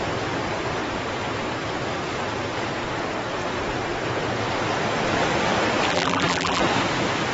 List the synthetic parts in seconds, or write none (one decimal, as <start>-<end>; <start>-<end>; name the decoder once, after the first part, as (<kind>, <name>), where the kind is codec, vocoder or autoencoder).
5.9-6.6 (vocoder, BigVGAN v2)